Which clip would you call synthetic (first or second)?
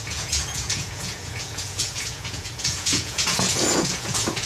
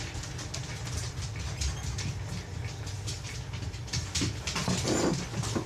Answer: first